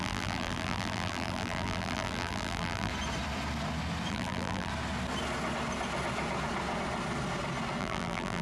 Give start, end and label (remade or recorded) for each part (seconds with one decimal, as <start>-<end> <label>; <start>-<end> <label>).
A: 0.0-2.9 remade; 2.9-4.1 recorded; 4.1-4.7 remade; 4.7-7.8 recorded; 7.8-8.4 remade